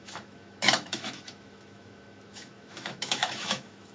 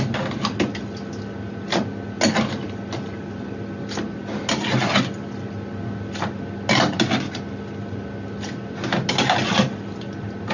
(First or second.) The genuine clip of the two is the second